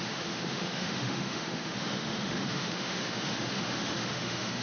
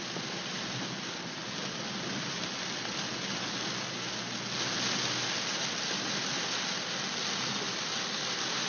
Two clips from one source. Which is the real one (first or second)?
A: second